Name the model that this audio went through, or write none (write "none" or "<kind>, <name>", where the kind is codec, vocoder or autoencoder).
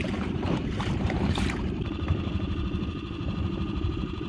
vocoder, BigVGAN v2